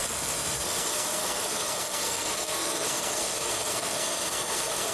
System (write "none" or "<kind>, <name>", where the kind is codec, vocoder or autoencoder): codec, SNAC